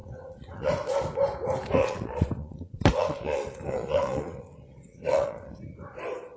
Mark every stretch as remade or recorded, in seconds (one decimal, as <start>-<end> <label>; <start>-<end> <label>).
0.0-0.7 remade; 0.7-1.8 recorded; 1.8-5.6 remade; 5.6-6.4 recorded